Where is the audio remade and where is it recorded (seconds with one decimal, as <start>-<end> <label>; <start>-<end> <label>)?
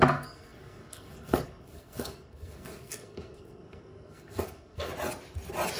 0.0-4.9 remade; 4.9-5.8 recorded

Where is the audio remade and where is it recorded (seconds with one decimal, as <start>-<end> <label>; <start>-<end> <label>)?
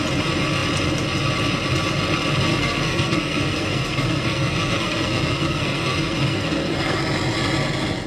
0.0-2.5 recorded; 2.5-7.0 remade; 7.0-8.1 recorded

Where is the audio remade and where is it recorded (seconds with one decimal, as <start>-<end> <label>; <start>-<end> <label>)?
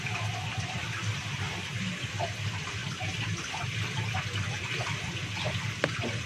0.0-6.3 recorded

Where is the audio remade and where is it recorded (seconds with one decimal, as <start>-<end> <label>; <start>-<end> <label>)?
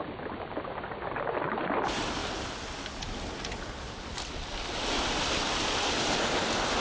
0.0-6.8 recorded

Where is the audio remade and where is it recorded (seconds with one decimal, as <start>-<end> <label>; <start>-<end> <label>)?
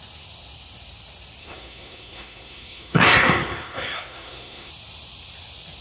0.0-1.4 recorded; 1.4-4.7 remade; 4.7-5.8 recorded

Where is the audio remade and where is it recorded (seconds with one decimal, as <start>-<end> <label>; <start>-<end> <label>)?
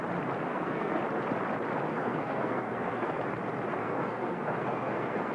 0.0-0.4 recorded; 0.4-1.0 remade; 1.0-1.9 recorded; 1.9-3.2 remade; 3.2-3.8 recorded; 3.8-5.3 remade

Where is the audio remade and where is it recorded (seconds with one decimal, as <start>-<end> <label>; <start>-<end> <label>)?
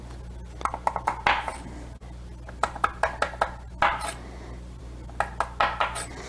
0.0-6.3 recorded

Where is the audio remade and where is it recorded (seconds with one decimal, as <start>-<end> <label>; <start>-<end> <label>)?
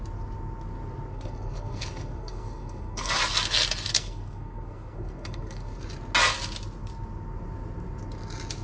0.0-1.1 recorded; 1.1-3.1 remade; 3.1-3.9 recorded; 3.9-5.8 remade; 5.8-8.6 recorded